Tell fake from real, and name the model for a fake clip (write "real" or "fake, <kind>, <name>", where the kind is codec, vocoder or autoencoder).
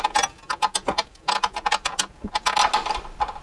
real